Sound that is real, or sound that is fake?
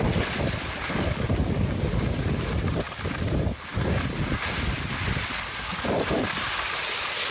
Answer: real